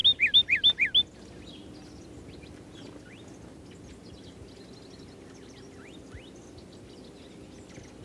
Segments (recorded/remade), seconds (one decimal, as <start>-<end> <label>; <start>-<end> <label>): 0.0-8.0 recorded